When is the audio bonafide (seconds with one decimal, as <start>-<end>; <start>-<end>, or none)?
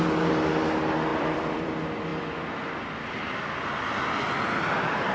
0.0-1.1; 1.7-5.1